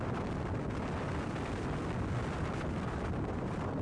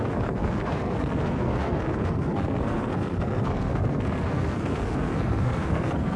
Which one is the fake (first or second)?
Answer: second